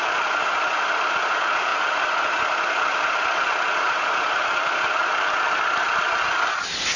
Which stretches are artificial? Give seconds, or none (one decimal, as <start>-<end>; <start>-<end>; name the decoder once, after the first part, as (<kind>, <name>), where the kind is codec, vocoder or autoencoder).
none